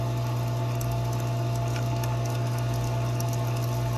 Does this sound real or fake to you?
real